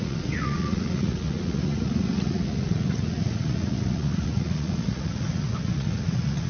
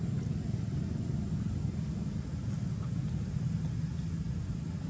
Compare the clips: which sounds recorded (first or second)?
second